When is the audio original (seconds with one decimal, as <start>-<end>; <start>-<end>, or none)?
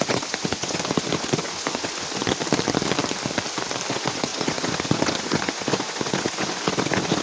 2.2-3.9